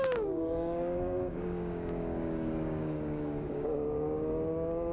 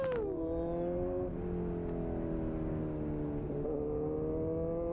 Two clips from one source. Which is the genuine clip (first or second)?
second